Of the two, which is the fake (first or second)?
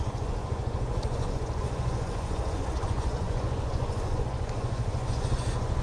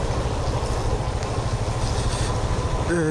first